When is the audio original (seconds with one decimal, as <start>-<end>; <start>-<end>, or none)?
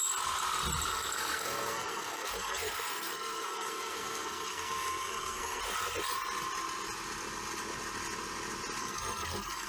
0.0-0.9; 5.6-8.8